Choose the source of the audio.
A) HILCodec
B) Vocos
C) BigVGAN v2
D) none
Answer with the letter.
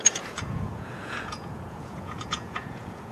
B